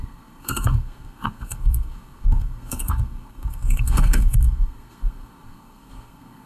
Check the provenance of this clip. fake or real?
fake